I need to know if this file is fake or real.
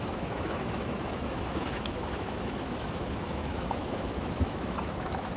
fake